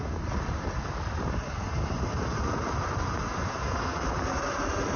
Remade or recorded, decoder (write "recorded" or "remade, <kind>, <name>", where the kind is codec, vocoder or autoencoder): recorded